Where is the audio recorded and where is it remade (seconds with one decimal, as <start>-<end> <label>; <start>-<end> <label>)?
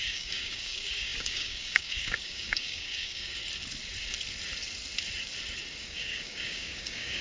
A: 0.0-3.4 remade; 3.4-5.8 recorded; 5.8-7.2 remade